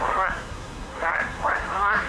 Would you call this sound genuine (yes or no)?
no